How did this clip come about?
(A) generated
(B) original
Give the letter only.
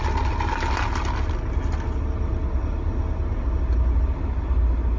B